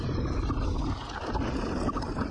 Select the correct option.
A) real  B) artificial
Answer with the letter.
A